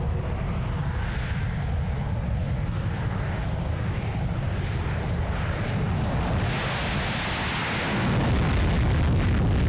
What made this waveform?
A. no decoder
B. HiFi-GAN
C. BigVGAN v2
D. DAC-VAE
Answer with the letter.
A